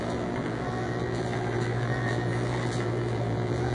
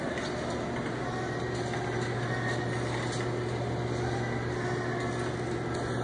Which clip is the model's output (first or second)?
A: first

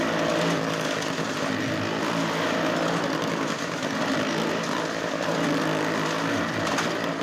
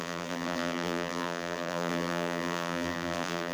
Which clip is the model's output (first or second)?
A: second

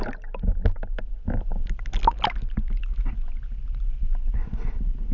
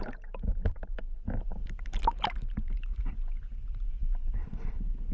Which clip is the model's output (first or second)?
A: second